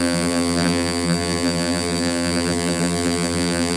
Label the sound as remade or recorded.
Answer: remade